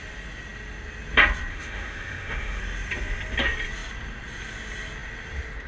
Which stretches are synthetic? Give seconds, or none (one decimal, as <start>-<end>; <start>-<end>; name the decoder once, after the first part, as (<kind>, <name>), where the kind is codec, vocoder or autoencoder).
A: 1.5-2.6 (autoencoder, DAC-VAE)